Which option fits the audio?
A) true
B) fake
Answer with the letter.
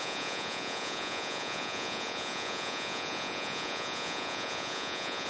B